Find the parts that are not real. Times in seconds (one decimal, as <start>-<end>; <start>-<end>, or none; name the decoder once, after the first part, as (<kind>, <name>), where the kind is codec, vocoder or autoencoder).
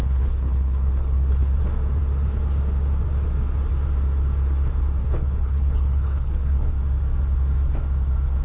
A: 0.0-1.6 (codec, HILCodec); 5.0-6.7